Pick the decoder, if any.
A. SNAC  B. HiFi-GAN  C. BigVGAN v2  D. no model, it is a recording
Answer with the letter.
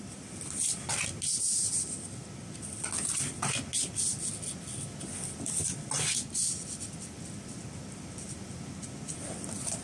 D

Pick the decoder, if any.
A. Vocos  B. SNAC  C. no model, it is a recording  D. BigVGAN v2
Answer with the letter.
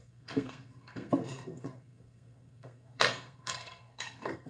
B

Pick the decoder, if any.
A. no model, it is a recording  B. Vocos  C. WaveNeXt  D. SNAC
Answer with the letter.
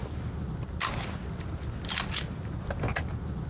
A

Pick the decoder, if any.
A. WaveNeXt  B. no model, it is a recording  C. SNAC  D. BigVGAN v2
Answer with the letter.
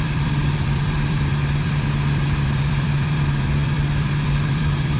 D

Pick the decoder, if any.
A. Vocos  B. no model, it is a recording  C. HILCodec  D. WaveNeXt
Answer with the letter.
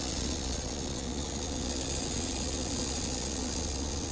A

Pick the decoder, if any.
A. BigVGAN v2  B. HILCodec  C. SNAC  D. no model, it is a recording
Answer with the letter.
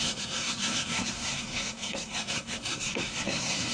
C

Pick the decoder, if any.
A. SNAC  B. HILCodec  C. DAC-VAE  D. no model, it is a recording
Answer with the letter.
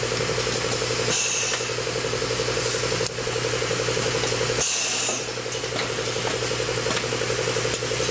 D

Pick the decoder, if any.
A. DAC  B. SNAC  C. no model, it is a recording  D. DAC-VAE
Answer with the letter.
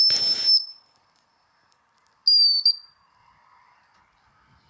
C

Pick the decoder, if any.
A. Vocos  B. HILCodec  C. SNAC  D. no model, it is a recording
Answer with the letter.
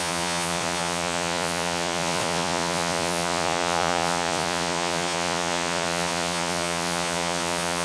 A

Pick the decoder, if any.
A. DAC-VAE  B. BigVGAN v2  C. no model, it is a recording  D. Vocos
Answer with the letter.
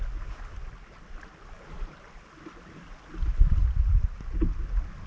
C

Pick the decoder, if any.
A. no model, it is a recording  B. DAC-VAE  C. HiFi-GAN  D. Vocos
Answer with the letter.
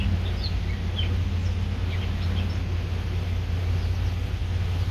A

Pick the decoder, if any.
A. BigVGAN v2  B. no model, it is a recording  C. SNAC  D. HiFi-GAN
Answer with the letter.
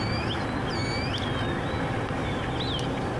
B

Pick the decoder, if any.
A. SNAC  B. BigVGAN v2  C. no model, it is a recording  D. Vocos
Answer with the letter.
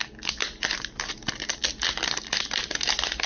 C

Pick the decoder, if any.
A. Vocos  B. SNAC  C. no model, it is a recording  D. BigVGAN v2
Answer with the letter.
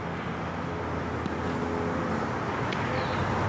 C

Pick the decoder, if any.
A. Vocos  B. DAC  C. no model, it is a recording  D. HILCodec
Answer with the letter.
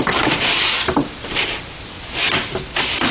C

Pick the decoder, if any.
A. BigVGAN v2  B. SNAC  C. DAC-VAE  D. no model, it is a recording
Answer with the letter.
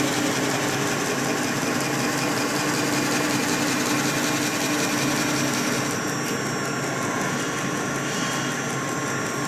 D